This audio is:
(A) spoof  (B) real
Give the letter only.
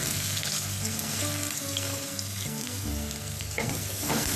A